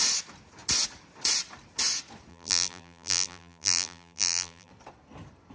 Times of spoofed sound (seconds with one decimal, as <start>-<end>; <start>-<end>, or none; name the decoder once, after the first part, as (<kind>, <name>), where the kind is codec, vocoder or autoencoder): 2.3-4.7 (vocoder, BigVGAN v2)